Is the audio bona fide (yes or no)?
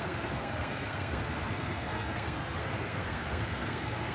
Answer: no